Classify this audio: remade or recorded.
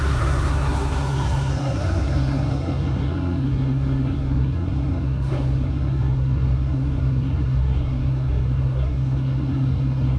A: remade